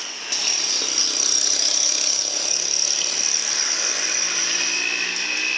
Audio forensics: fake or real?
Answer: real